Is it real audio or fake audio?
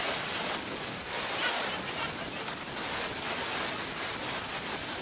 real